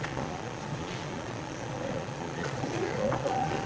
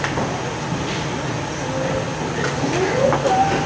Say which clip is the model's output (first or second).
first